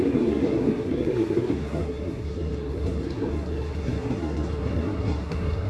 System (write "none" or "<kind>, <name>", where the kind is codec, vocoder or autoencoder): codec, SNAC